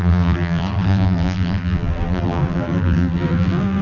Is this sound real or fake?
fake